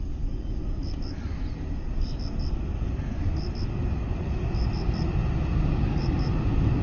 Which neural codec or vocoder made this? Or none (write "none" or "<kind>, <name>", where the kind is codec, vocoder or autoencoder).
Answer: none